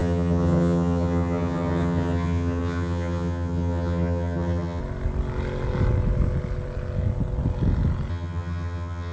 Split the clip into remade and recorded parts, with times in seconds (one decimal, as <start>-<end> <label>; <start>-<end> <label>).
0.0-4.8 remade; 4.8-8.1 recorded; 8.1-9.1 remade